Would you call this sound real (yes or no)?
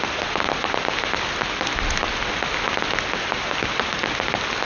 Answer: yes